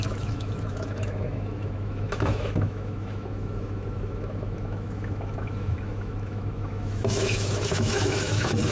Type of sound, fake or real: fake